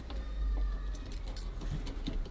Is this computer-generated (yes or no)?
no